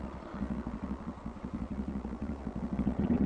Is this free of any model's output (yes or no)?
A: no